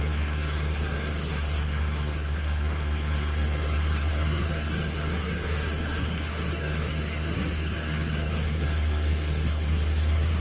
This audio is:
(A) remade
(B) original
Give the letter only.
A